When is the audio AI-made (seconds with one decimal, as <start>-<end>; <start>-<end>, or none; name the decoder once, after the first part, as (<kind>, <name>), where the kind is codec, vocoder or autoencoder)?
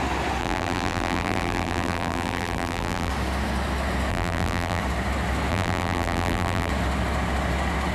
0.4-3.1 (vocoder, BigVGAN v2); 4.1-4.8; 5.5-6.7